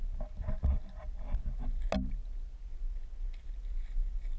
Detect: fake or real real